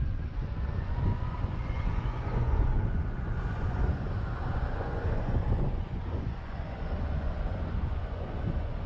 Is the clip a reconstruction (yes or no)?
yes